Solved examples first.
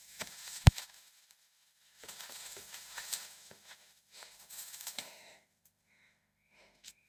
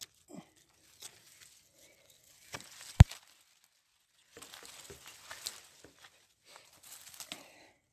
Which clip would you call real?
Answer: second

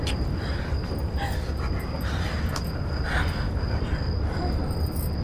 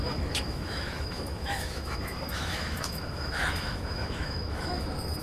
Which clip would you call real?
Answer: first